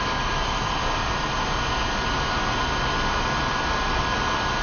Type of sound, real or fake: real